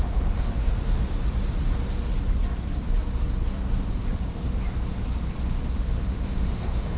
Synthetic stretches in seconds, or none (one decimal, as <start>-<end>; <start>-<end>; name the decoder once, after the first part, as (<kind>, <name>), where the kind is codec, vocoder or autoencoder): 0.0-1.2 (autoencoder, DAC-VAE); 5.4-7.0